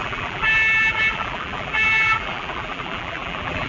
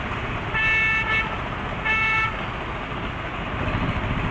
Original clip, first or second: second